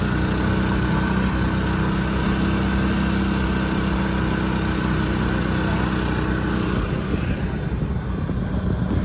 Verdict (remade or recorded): recorded